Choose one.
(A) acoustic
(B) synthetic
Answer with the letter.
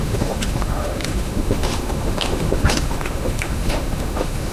B